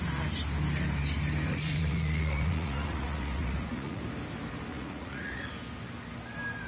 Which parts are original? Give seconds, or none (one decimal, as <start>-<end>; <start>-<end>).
0.0-1.5; 4.0-4.7; 5.6-6.7